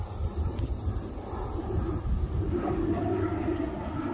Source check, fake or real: real